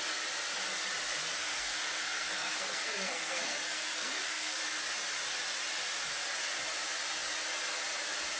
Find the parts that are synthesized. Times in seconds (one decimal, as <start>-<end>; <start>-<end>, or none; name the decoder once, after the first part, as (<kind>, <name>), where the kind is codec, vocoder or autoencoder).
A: 1.5-4.6 (codec, SNAC)